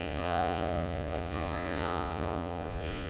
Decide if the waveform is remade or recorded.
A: remade